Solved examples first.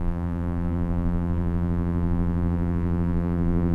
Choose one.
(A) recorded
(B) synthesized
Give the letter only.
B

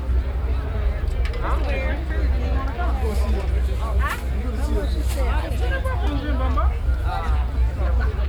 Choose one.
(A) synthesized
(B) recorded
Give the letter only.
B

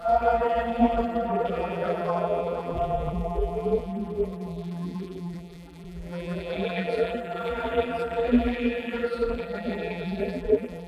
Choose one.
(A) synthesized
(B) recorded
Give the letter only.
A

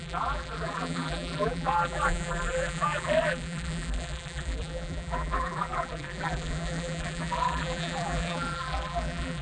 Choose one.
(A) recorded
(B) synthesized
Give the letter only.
B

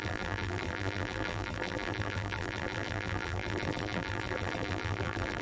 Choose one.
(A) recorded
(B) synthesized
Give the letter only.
B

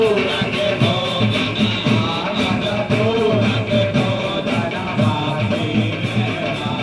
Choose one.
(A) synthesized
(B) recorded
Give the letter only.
A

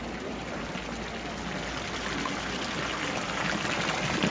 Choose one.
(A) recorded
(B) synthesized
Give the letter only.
A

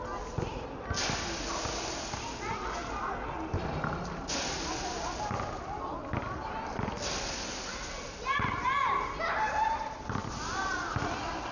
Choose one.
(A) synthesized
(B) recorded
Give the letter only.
B